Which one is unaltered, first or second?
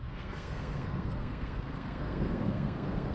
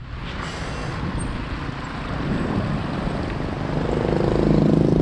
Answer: second